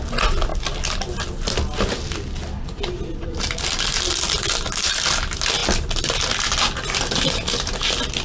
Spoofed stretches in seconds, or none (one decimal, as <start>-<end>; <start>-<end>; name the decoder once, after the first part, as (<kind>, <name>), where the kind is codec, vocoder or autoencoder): none